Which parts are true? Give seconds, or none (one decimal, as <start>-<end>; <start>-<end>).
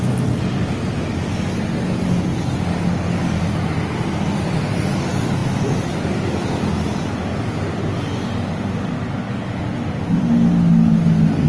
0.0-11.5